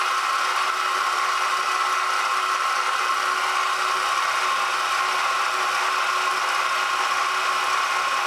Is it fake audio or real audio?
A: real